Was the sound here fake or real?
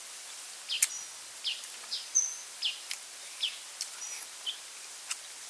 real